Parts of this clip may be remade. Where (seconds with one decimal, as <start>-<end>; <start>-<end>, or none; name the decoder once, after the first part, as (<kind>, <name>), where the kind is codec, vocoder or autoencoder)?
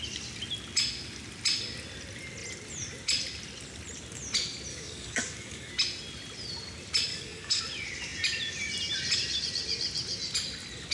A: 4.7-5.7 (codec, DAC); 7.1-7.6